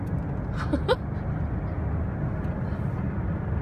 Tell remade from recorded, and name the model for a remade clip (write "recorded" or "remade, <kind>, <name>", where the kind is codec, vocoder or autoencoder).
recorded